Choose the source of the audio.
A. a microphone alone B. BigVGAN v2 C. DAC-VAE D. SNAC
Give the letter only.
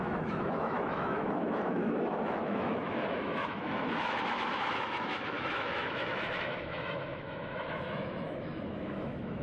C